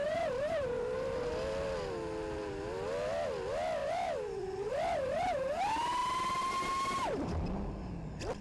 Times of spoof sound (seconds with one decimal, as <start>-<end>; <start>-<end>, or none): 0.0-1.3; 3.8-4.4